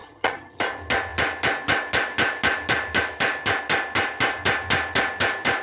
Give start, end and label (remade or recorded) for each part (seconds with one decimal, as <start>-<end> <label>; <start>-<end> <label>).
0.0-0.6 remade; 0.6-5.6 recorded